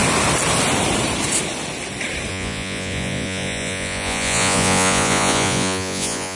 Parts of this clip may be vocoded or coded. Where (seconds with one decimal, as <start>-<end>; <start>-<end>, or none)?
2.3-6.4

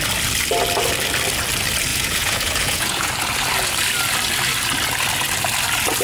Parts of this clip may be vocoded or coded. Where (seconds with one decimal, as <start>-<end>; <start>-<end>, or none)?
1.9-3.1

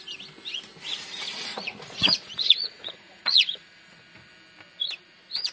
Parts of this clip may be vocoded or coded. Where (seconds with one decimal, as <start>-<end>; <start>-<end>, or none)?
1.3-4.3; 4.8-5.5

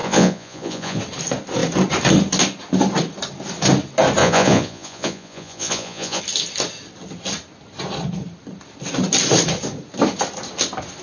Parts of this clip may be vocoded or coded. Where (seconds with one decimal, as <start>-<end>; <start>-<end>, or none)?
0.0-1.0; 4.2-6.2

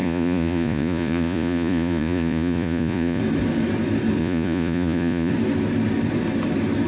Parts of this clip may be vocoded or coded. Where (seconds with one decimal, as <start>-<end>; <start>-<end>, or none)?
0.0-3.2; 4.2-5.3

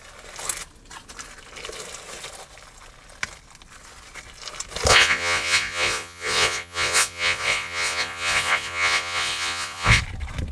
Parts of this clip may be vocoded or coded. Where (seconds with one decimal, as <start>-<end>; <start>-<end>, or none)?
4.9-10.0

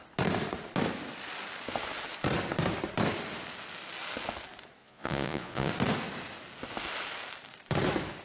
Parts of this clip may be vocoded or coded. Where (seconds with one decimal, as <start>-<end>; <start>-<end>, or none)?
4.8-5.7

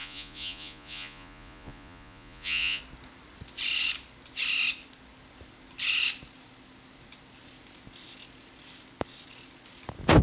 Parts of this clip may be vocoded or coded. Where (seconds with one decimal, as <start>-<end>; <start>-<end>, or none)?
0.0-2.8